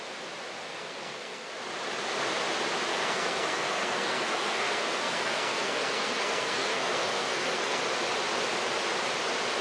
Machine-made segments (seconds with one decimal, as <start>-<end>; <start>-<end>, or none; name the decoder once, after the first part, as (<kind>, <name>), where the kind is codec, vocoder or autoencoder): 0.7-1.5 (codec, SNAC); 2.9-7.8